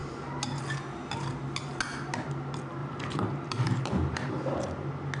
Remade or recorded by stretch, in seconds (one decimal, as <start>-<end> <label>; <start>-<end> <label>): 0.0-2.8 recorded; 2.8-4.3 remade; 4.3-5.2 recorded